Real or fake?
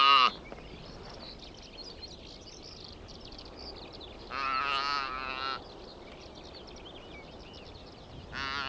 real